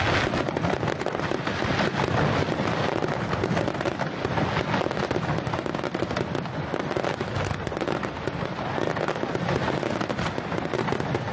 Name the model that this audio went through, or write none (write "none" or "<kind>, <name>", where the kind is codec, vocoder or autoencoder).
none